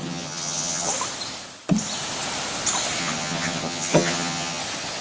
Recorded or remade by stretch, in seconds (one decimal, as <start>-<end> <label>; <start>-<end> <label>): 0.0-0.9 remade; 0.9-3.0 recorded; 3.0-4.6 remade; 4.6-5.0 recorded